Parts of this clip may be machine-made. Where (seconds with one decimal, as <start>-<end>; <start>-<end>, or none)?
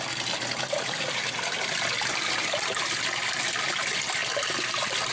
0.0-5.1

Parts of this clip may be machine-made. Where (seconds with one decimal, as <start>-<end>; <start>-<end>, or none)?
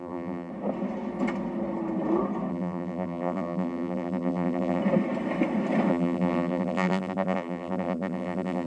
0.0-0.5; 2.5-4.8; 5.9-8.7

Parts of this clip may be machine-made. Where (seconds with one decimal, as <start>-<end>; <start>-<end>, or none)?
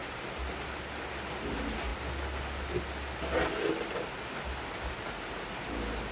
none